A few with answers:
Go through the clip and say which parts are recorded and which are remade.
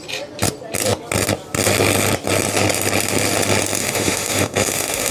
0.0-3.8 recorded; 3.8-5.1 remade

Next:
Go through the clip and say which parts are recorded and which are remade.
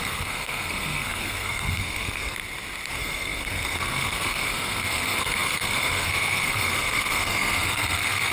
0.0-2.4 remade; 2.4-2.9 recorded; 2.9-8.3 remade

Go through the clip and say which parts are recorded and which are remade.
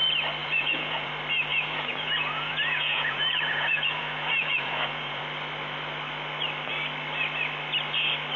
0.0-0.4 recorded; 0.4-1.1 remade; 1.1-1.5 recorded; 1.5-5.2 remade; 5.2-8.4 recorded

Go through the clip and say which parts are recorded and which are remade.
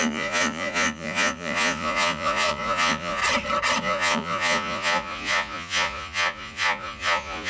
0.0-3.2 remade; 3.2-3.8 recorded; 3.8-7.5 remade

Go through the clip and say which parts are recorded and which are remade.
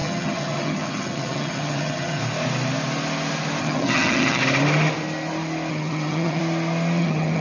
0.0-2.2 remade; 2.2-3.6 recorded; 3.6-4.4 remade; 4.4-5.7 recorded; 5.7-6.4 remade; 6.4-7.0 recorded; 7.0-7.4 remade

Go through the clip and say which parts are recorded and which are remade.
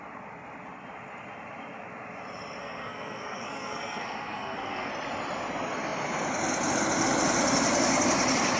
0.0-2.6 recorded; 2.6-4.9 remade; 4.9-8.6 recorded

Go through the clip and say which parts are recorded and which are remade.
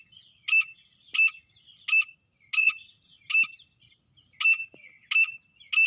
0.0-2.6 recorded; 2.6-3.2 remade; 3.2-5.9 recorded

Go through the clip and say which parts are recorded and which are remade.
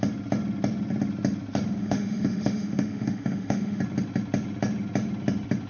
0.0-1.8 recorded; 1.8-3.8 remade; 3.8-5.7 recorded